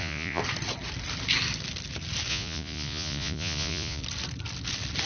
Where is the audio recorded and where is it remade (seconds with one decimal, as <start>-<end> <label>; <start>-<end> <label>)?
0.0-0.4 remade; 0.4-2.3 recorded; 2.3-4.0 remade; 4.0-5.1 recorded